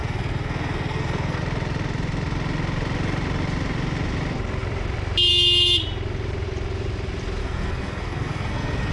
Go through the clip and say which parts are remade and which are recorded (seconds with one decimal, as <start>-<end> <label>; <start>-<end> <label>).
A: 0.0-1.4 remade; 1.4-7.4 recorded; 7.4-8.9 remade